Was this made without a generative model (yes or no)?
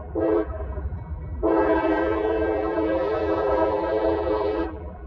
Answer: no